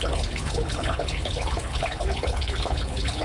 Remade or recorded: remade